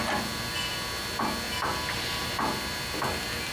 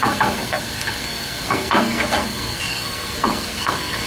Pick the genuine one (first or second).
first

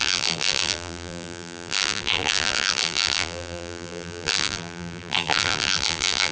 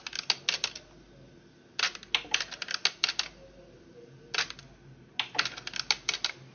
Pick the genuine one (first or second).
second